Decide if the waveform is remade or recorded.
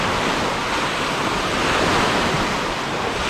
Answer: recorded